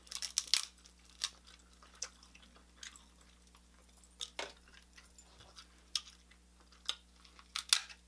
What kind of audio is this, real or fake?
real